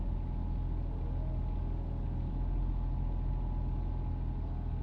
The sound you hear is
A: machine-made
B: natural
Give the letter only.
B